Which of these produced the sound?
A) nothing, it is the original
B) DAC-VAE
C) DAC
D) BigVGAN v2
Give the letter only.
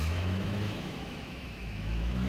B